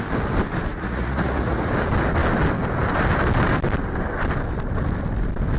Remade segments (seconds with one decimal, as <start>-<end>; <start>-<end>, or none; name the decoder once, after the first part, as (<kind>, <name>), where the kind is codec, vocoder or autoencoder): 0.7-1.7 (vocoder, Vocos)